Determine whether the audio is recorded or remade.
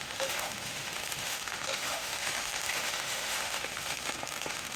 remade